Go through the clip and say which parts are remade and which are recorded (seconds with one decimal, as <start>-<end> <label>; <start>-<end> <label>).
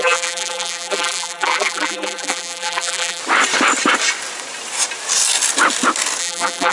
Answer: 0.0-3.2 remade; 3.2-6.2 recorded; 6.2-6.7 remade